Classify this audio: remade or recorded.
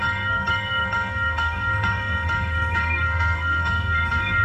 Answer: remade